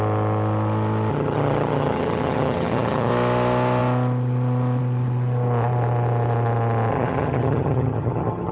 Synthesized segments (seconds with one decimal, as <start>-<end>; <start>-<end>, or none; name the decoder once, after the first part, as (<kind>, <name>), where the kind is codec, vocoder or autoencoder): 1.1-3.1 (vocoder, HiFi-GAN); 6.9-8.5